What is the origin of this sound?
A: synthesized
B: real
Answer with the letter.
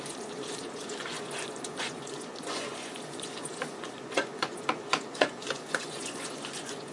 A